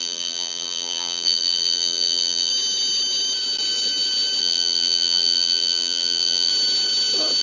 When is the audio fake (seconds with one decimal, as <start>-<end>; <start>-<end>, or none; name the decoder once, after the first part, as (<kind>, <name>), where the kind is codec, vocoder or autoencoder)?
0.0-2.5 (vocoder, BigVGAN v2); 4.4-6.5